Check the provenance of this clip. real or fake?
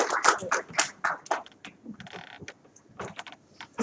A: real